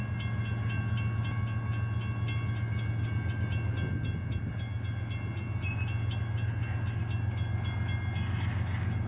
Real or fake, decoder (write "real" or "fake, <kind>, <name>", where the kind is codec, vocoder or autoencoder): real